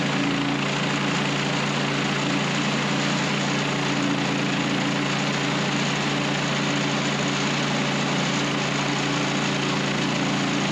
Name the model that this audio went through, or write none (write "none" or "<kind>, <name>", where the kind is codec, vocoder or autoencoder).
none